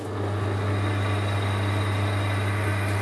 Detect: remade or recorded recorded